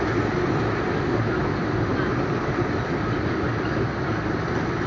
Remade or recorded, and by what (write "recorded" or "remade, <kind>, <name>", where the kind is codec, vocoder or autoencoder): recorded